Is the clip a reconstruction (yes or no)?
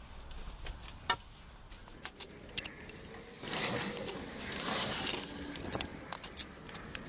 no